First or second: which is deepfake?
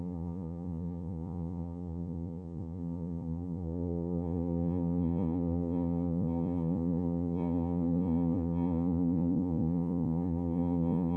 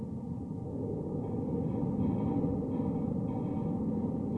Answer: first